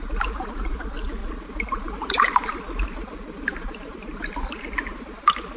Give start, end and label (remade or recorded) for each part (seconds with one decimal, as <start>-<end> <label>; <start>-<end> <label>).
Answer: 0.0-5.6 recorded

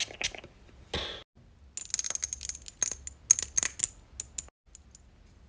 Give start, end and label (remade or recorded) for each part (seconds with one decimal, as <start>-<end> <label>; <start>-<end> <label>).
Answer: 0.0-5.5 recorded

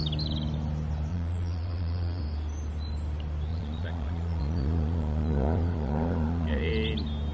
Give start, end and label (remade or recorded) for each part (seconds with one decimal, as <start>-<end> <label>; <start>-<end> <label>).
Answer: 0.0-1.1 recorded; 1.1-2.2 remade; 2.2-3.5 recorded; 3.5-6.7 remade; 6.7-7.3 recorded

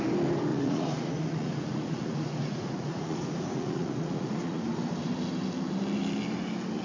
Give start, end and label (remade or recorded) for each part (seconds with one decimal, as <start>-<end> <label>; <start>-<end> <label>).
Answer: 0.0-0.5 recorded; 0.5-4.6 remade; 4.6-6.8 recorded